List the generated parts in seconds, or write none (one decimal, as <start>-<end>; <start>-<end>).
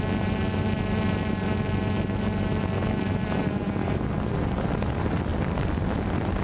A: none